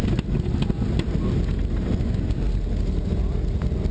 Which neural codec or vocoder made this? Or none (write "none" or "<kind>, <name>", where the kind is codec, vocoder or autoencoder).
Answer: none